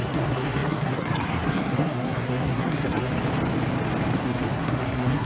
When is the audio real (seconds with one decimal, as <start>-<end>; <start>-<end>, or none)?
3.1-4.2